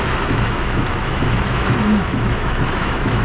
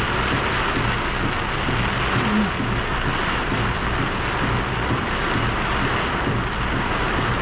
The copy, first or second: first